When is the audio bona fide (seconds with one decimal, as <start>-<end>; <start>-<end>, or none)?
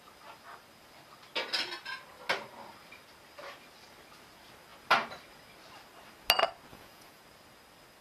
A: 0.0-6.7; 7.2-8.0